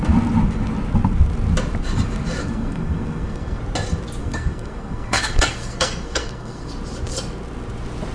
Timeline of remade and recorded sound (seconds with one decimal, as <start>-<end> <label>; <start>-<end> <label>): 0.0-2.4 recorded; 2.4-3.6 remade; 3.6-4.2 recorded; 4.2-6.7 remade; 6.7-8.1 recorded